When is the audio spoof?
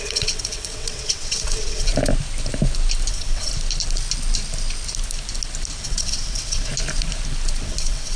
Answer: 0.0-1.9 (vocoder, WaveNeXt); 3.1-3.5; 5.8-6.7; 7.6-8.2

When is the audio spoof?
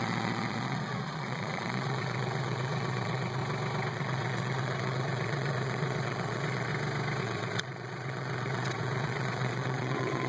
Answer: 0.0-3.4 (vocoder, Vocos); 3.9-6.7; 7.2-10.3